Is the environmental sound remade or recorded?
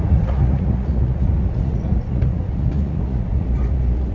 remade